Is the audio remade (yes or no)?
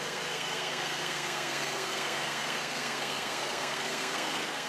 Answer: yes